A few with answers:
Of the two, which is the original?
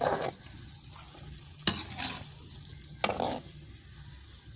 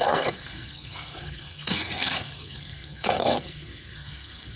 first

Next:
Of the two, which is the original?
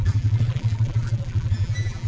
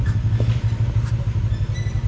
second